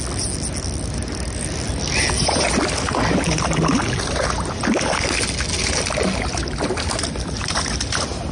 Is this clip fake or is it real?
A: real